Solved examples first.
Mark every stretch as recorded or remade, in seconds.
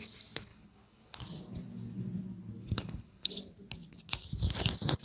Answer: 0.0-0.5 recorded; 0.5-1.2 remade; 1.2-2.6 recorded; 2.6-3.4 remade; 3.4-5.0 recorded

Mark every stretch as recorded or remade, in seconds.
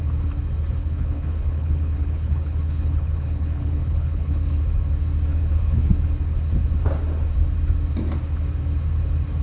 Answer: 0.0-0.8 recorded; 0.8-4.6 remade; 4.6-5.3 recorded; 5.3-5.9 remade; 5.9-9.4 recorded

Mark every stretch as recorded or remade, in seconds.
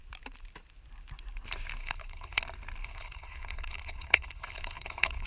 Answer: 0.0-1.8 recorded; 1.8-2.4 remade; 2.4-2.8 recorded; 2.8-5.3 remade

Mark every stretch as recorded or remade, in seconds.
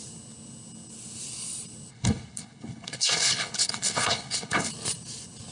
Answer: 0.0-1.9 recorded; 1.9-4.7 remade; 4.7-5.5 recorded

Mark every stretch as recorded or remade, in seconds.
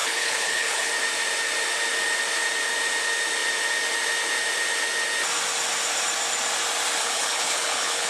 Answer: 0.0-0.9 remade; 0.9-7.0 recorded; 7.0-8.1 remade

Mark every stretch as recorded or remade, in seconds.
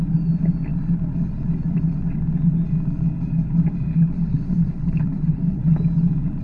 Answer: 0.0-3.9 recorded; 3.9-5.6 remade; 5.6-6.4 recorded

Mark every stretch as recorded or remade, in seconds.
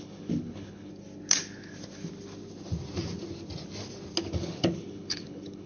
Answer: 0.0-0.9 remade; 0.9-4.3 recorded; 4.3-5.7 remade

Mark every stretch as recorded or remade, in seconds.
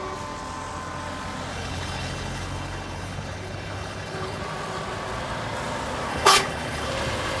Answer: 0.0-1.5 recorded; 1.5-4.4 remade; 4.4-6.1 recorded; 6.1-6.9 remade; 6.9-7.4 recorded